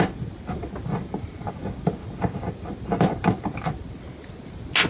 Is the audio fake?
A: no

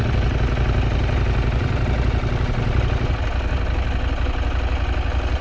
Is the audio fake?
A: no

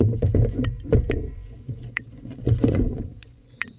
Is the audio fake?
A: yes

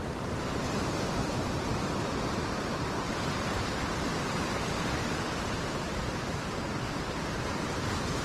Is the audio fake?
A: yes